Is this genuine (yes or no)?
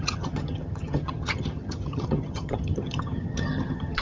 no